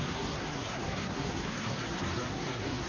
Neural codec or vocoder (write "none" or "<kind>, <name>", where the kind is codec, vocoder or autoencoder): codec, SNAC